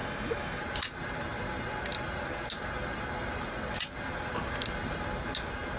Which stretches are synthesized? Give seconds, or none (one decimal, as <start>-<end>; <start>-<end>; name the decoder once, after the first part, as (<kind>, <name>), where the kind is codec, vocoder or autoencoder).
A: 0.0-0.6 (autoencoder, DAC-VAE)